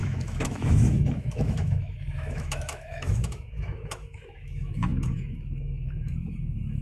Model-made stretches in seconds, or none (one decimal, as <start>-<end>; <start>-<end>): 0.0-6.8